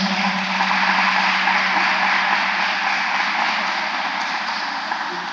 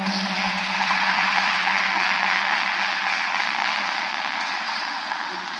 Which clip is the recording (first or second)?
first